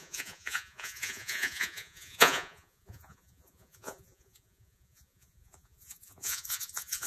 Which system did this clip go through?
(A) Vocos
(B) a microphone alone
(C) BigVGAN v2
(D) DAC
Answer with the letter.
A